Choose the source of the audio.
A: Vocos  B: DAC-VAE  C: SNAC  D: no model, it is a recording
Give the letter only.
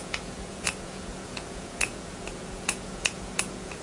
A